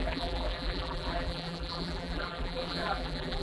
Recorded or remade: remade